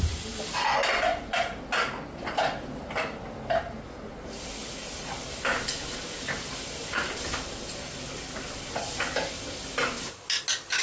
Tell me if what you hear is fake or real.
real